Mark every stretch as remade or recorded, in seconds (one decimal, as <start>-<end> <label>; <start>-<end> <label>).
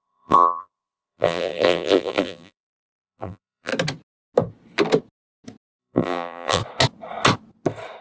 0.0-3.7 remade; 3.7-5.8 recorded; 5.8-6.6 remade; 6.6-8.0 recorded